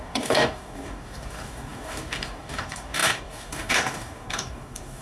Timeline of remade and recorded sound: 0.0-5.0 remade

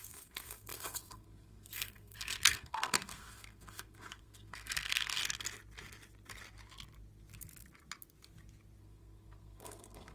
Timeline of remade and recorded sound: 0.0-5.2 remade; 5.2-8.8 recorded; 8.8-10.1 remade

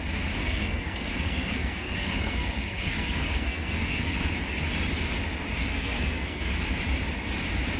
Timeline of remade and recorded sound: 0.0-0.4 recorded; 0.4-4.3 remade; 4.3-5.6 recorded; 5.6-6.5 remade; 6.5-7.8 recorded

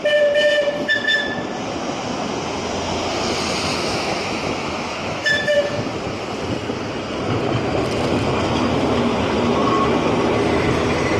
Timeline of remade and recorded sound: 0.0-3.7 recorded; 3.7-5.8 remade; 5.8-11.2 recorded

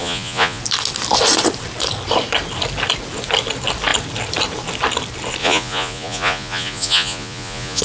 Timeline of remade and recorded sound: 0.0-0.6 remade; 0.6-5.4 recorded; 5.4-7.8 remade

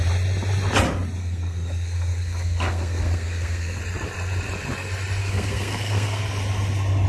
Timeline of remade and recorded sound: 0.0-1.2 recorded; 1.2-3.8 remade; 3.8-5.2 recorded; 5.2-6.2 remade; 6.2-7.1 recorded

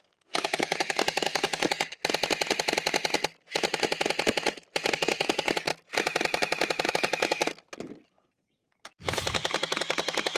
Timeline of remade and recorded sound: 0.0-2.0 remade; 2.0-4.9 recorded; 4.9-5.7 remade; 5.7-6.9 recorded; 6.9-7.4 remade; 7.4-8.1 recorded; 8.1-10.4 remade